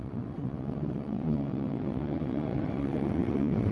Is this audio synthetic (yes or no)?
yes